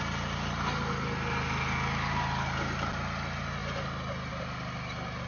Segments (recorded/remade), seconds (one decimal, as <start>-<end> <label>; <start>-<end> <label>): 0.0-5.3 recorded